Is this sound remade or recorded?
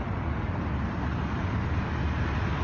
recorded